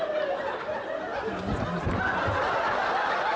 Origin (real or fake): real